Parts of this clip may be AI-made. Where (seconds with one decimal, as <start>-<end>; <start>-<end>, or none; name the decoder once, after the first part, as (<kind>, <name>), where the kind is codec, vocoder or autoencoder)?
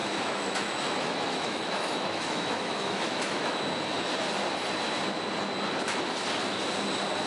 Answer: 0.0-3.6 (autoencoder, DAC-VAE)